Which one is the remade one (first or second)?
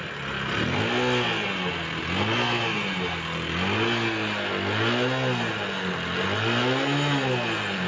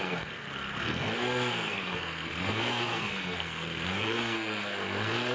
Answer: second